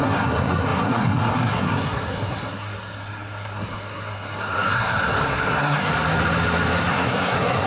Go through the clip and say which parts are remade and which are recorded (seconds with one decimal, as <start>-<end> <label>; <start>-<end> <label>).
0.0-5.9 remade; 5.9-6.9 recorded; 6.9-7.7 remade